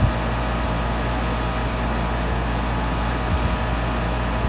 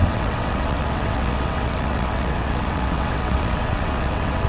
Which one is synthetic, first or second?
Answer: second